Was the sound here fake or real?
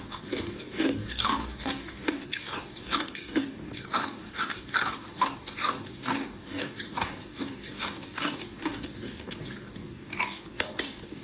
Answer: fake